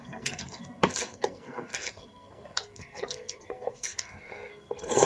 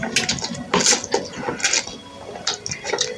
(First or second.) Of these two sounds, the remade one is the first